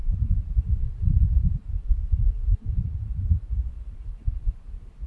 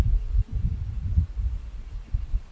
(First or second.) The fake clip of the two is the first